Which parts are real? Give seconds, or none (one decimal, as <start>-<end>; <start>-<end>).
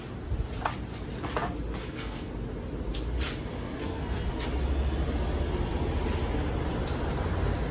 0.0-1.8; 2.3-3.8; 4.3-7.7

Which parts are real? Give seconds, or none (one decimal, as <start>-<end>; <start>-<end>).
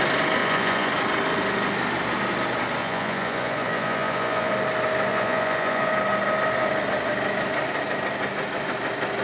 0.0-0.4; 0.9-2.8; 4.5-5.1; 5.9-9.2